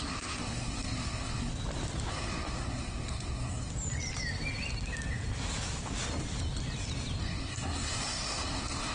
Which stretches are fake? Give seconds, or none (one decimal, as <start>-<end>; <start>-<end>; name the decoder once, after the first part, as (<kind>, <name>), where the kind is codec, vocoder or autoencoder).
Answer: 0.0-1.5 (codec, SNAC); 2.1-3.7; 7.2-8.9